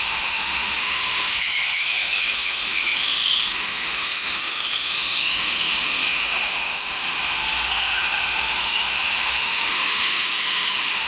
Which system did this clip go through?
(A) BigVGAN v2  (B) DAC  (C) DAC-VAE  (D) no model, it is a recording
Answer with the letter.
C